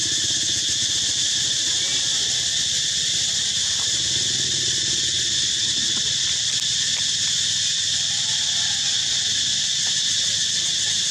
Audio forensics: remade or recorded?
recorded